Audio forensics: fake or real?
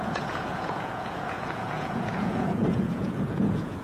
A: fake